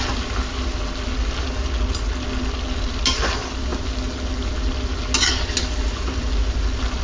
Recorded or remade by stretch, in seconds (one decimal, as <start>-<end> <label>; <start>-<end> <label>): 0.0-7.0 recorded